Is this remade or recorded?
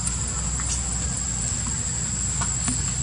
recorded